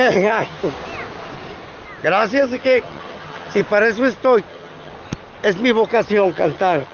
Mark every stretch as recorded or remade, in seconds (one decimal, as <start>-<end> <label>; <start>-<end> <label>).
0.0-0.6 remade; 0.6-2.4 recorded; 2.4-3.6 remade; 3.6-4.5 recorded; 4.5-4.9 remade; 4.9-6.1 recorded; 6.1-6.9 remade